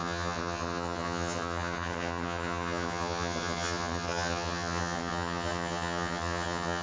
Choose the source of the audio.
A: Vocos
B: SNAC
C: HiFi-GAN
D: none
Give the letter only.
C